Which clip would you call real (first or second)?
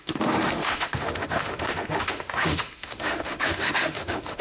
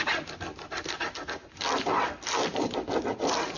second